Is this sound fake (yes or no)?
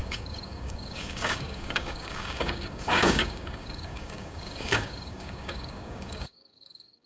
yes